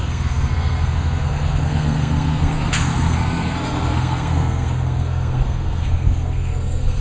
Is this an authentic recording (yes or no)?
no